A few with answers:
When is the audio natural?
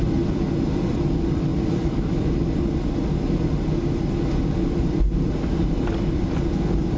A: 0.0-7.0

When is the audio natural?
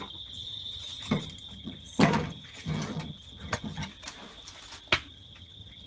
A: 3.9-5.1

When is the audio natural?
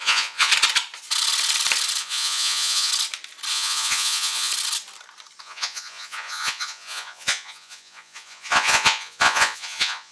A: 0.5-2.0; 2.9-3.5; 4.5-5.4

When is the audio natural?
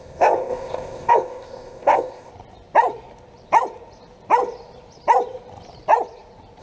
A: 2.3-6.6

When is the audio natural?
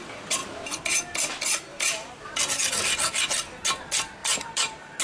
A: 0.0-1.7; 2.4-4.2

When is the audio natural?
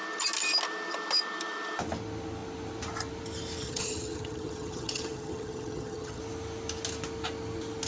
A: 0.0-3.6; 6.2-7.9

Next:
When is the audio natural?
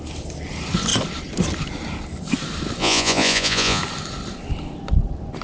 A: 0.0-2.8; 3.8-5.4